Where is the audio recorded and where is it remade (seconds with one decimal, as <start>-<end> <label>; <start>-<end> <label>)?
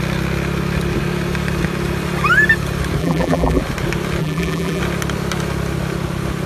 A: 0.0-3.0 recorded; 3.0-3.6 remade; 3.6-4.2 recorded; 4.2-4.8 remade; 4.8-6.5 recorded